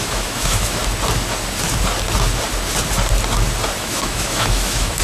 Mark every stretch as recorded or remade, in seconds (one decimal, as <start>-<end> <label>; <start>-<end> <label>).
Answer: 0.0-0.8 remade; 0.8-3.8 recorded; 3.8-5.0 remade